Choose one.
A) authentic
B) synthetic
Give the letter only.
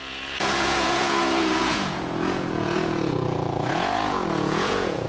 B